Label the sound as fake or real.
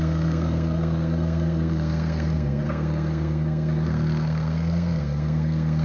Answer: fake